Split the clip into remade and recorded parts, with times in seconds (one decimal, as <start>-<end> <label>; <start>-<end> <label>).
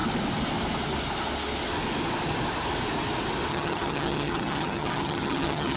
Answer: 0.0-3.5 recorded; 3.5-5.8 remade